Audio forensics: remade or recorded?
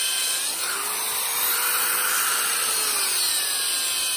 recorded